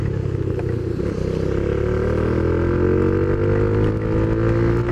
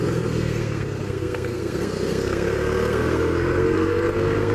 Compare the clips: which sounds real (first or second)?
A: first